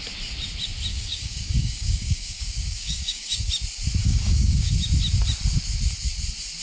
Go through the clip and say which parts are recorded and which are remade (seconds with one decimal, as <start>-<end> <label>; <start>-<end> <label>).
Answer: 0.0-0.9 recorded; 0.9-3.5 remade; 3.5-4.0 recorded; 4.0-4.7 remade; 4.7-6.6 recorded